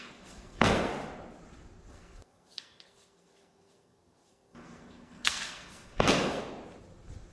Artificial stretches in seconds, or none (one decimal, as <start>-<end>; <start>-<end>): 0.0-0.9; 1.9-6.4

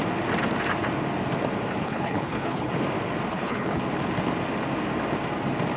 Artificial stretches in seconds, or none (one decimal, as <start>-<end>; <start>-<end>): 1.8-2.7; 3.3-3.8

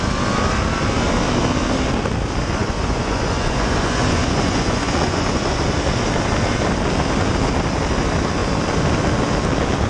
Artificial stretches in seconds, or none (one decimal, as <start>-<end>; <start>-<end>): 2.6-5.6

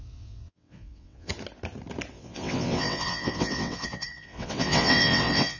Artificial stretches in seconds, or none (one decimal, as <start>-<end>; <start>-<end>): 0.0-1.3; 2.1-5.6